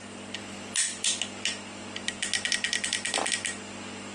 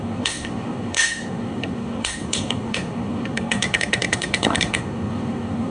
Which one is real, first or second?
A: first